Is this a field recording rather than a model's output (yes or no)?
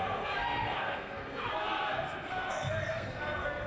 no